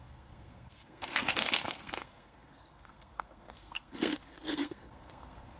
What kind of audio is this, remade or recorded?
remade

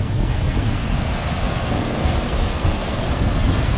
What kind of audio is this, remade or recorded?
remade